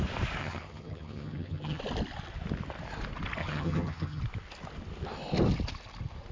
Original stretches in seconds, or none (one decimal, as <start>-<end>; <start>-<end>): 0.0-0.4; 1.8-3.4; 4.2-6.3